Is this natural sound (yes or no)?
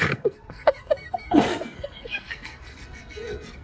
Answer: no